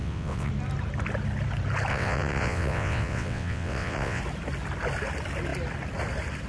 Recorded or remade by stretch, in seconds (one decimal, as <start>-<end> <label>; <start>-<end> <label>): 0.0-0.5 remade; 0.5-1.9 recorded; 1.9-4.2 remade; 4.2-6.5 recorded